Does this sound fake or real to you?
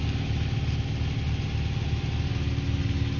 real